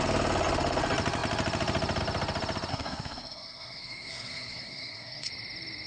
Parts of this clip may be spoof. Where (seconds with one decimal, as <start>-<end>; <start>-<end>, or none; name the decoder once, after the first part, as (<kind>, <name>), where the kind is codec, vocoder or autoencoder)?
2.7-5.3 (codec, SNAC)